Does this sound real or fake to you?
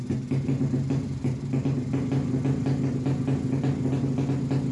real